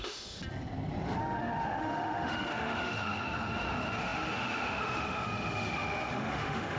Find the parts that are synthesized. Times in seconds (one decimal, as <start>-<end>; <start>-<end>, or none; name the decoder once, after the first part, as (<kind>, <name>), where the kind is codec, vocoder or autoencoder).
0.0-0.4 (autoencoder, DAC-VAE); 1.2-6.8